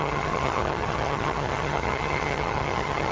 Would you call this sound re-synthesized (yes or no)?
yes